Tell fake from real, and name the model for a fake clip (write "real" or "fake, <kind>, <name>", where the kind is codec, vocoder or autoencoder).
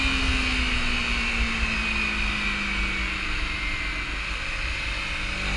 real